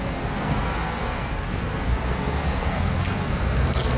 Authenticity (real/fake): fake